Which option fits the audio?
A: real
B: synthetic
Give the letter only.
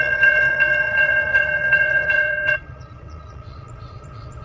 B